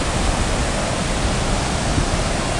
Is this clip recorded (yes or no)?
yes